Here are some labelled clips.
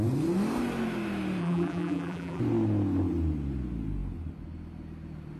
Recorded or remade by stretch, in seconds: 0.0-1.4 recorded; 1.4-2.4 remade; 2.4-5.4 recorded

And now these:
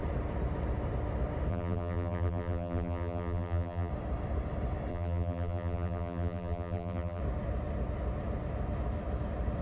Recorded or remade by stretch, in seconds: 0.0-1.5 recorded; 1.5-3.9 remade; 3.9-4.9 recorded; 4.9-7.2 remade; 7.2-9.6 recorded